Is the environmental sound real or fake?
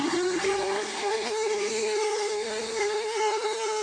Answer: fake